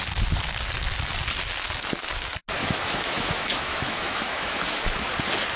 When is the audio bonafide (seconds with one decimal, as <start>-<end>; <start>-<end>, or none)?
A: 0.0-2.6; 5.1-5.6

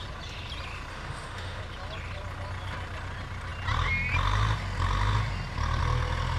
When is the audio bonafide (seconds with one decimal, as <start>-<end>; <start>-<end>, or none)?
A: 0.0-0.9; 1.6-6.4

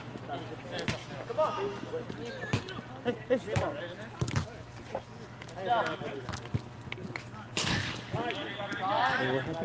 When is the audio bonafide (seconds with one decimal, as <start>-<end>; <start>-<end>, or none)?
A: 0.0-1.0; 1.9-9.6

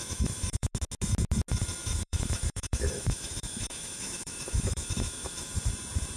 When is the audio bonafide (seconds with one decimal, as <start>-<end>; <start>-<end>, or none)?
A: 0.7-1.8; 5.5-6.2

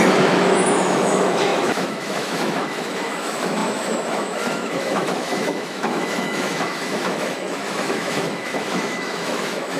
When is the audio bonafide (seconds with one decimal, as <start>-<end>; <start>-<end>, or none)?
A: none

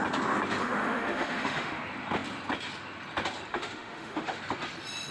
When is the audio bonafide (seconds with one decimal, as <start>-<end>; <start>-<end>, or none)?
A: 0.0-0.6; 1.8-3.5; 4.4-5.1

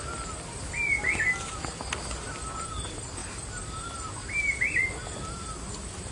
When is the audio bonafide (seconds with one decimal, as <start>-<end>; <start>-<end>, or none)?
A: 0.0-6.1

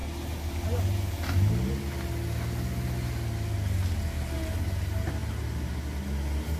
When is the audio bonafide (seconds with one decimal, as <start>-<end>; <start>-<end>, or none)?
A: 0.0-6.6